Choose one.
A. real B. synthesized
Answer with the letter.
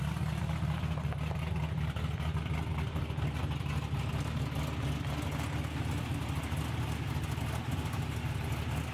A